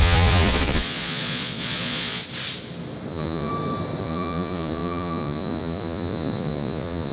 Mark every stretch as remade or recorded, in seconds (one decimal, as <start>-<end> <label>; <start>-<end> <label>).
0.0-2.2 remade; 2.2-3.1 recorded; 3.1-3.5 remade; 3.5-4.0 recorded; 4.0-7.1 remade